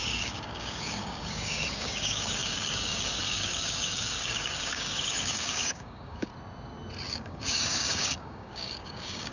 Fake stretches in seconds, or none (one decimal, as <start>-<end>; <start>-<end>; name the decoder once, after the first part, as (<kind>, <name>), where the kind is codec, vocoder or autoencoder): 0.0-6.3 (codec, DAC); 7.1-9.3